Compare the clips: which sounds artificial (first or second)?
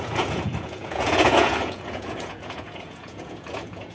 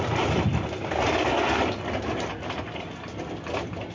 first